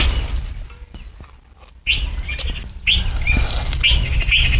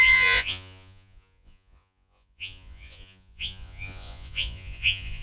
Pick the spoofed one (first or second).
second